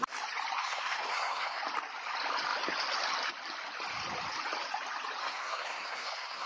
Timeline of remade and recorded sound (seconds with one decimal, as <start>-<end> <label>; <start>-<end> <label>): 0.0-0.6 recorded; 0.6-1.6 remade; 1.6-5.2 recorded; 5.2-6.5 remade